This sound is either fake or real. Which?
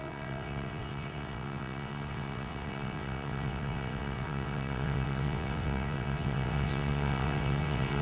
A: fake